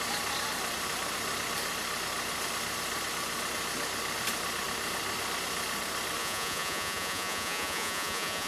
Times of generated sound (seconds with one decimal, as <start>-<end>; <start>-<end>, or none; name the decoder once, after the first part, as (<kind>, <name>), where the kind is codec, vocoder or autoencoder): 6.2-8.5 (vocoder, Vocos)